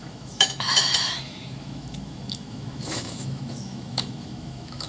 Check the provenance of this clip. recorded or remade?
remade